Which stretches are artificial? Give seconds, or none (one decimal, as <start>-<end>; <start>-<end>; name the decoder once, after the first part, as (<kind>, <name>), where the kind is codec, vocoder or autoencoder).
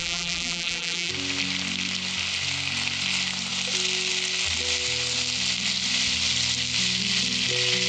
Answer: 0.0-1.1 (vocoder, BigVGAN v2)